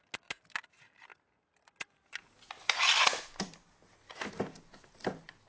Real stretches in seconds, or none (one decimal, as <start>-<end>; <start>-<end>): 0.0-5.5